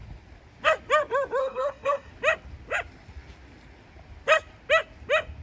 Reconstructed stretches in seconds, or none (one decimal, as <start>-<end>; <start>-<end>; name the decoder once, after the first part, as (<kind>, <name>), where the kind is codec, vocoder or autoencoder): 1.4-2.1 (codec, SNAC)